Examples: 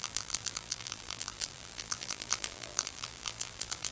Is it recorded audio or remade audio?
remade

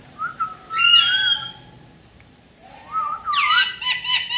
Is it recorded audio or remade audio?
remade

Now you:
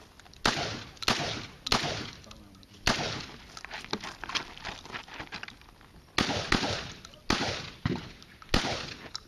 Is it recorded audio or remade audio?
recorded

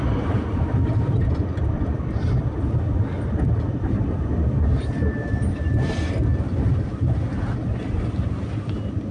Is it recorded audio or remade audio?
remade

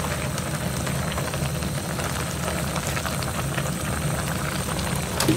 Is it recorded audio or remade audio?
recorded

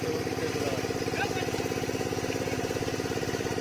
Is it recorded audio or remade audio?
recorded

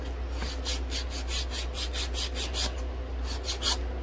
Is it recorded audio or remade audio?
recorded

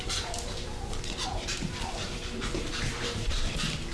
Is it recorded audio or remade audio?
remade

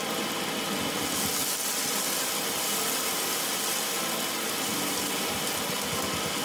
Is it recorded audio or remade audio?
recorded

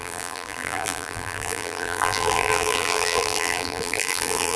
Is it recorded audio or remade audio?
remade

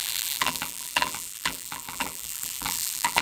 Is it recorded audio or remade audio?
remade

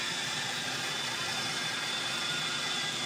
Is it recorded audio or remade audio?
remade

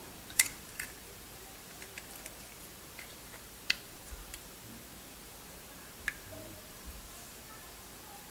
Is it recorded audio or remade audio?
remade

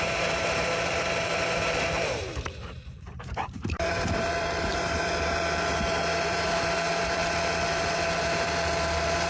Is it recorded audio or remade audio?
remade